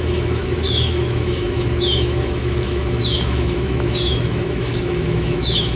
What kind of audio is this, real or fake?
fake